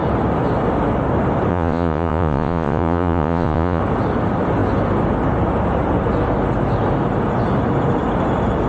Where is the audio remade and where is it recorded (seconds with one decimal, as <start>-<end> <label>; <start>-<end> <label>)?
0.0-1.5 recorded; 1.5-3.8 remade; 3.8-8.7 recorded